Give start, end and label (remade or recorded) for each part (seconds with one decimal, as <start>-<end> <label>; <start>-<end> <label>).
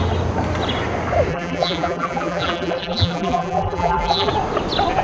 0.0-1.3 recorded; 1.3-4.3 remade; 4.3-5.0 recorded